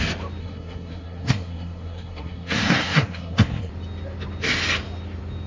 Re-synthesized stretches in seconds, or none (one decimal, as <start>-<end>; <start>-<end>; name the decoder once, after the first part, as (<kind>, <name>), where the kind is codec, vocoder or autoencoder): 0.4-3.7 (codec, SNAC)